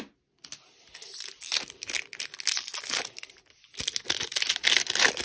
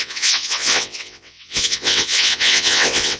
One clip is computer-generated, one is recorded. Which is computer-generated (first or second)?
second